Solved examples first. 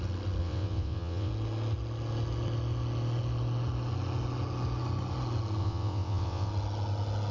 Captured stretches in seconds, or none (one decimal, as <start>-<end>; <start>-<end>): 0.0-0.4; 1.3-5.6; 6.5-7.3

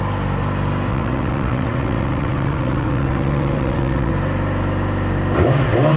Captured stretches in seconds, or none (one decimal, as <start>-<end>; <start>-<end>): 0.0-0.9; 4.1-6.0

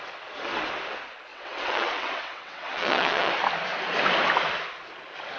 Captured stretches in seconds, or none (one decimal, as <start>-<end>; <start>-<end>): 0.0-1.3; 3.3-5.4